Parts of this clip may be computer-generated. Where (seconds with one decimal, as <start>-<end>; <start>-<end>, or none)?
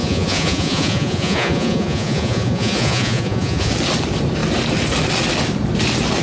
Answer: 0.0-3.7